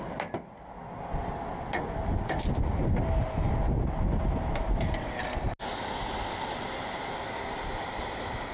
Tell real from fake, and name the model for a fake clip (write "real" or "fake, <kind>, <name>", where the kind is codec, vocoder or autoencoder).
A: real